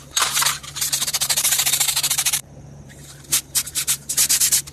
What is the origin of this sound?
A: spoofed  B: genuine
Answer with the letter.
A